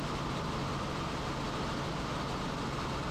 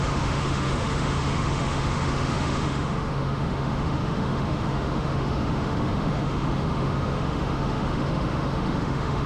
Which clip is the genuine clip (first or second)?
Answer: first